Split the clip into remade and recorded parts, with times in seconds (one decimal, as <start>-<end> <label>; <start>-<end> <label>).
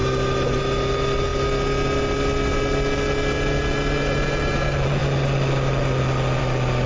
0.0-6.9 recorded